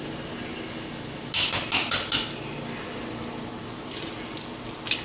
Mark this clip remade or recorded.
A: recorded